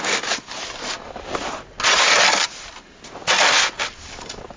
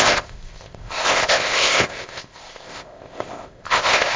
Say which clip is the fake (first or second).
second